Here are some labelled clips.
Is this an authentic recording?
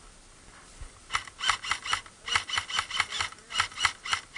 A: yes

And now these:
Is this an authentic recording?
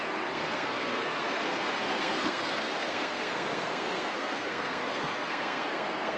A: no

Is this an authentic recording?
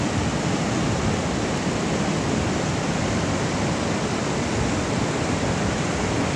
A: yes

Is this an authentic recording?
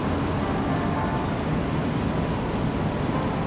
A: yes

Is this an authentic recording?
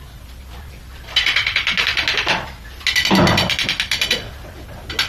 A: yes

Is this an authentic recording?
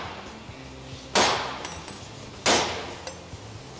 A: yes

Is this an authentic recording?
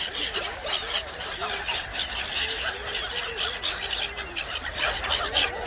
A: yes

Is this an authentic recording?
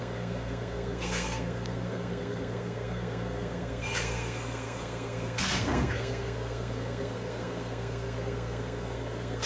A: no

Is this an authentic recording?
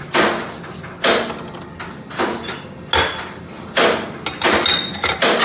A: yes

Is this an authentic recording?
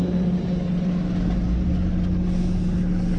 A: yes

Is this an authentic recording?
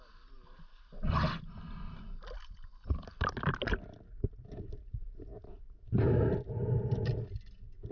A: yes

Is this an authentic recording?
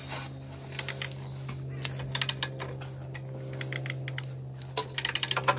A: yes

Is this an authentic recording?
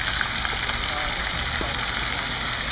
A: yes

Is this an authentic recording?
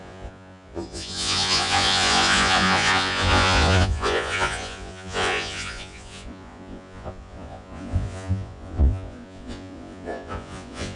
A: no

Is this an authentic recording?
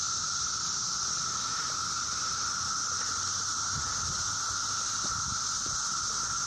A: yes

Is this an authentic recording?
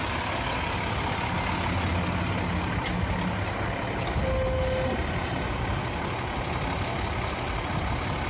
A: yes